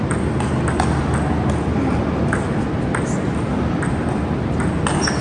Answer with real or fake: real